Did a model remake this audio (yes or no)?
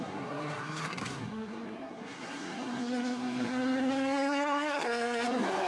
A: yes